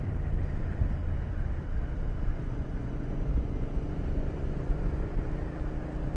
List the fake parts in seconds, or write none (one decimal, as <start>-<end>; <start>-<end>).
2.3-5.3